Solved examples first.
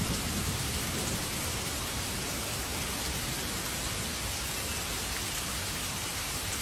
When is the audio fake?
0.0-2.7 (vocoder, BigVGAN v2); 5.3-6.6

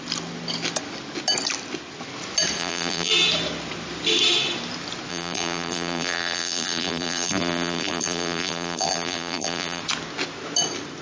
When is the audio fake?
2.6-3.1 (vocoder, BigVGAN v2); 5.1-9.8